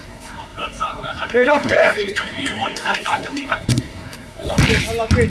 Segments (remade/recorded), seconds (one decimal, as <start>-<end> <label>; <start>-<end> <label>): 0.0-4.6 remade; 4.6-5.3 recorded